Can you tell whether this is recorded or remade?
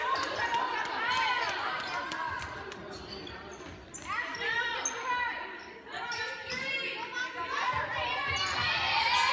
recorded